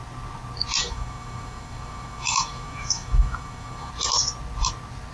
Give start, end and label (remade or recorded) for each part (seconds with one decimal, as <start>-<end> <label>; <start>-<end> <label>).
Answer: 0.0-0.8 recorded; 0.8-3.9 remade; 3.9-5.1 recorded